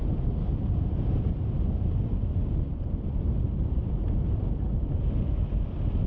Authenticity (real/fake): real